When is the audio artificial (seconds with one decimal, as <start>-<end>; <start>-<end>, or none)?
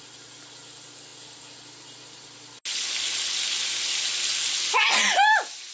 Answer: none